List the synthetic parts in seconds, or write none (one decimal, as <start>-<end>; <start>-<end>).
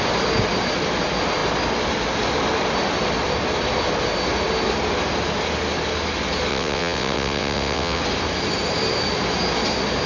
6.5-8.0